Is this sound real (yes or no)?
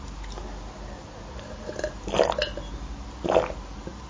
yes